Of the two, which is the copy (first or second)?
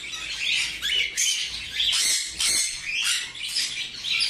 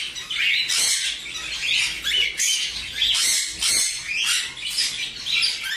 first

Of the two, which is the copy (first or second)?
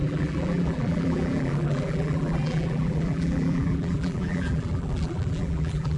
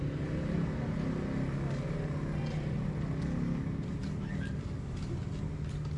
first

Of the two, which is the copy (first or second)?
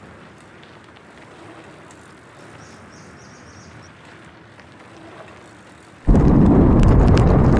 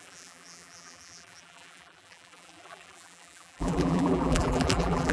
second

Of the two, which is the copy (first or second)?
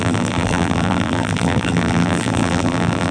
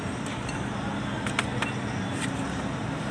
first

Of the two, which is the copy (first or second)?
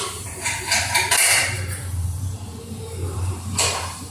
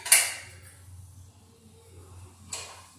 first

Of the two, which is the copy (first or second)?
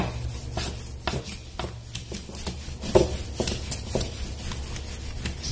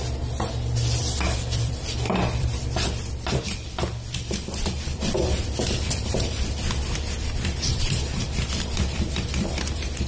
second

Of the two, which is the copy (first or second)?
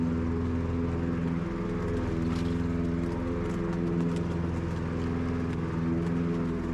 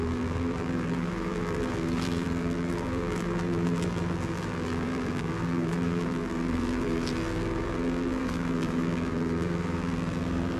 second